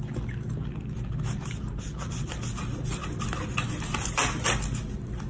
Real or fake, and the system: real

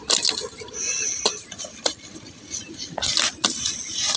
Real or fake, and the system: real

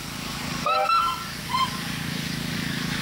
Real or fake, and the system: fake, codec, DAC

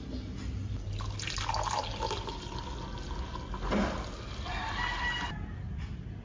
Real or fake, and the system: real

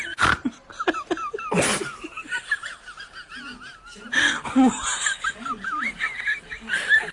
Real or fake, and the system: real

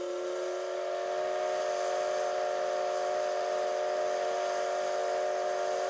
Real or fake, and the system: real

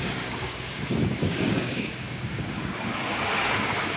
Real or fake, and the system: fake, codec, DAC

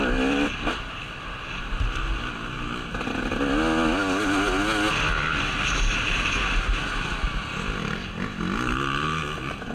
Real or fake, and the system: real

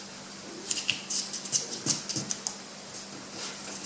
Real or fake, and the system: real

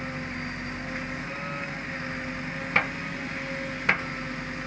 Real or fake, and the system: real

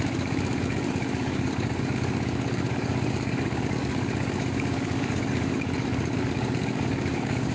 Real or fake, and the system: fake, codec, DAC